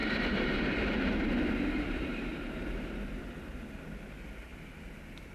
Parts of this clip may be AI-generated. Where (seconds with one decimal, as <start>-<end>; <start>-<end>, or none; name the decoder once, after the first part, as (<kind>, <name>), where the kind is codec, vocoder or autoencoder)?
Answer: 0.0-3.2 (vocoder, BigVGAN v2)